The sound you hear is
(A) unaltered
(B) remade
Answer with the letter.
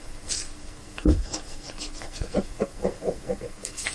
B